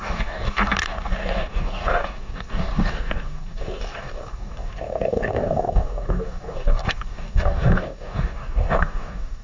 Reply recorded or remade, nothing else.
remade